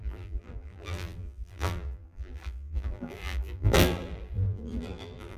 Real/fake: fake